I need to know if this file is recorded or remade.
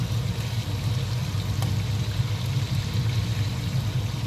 recorded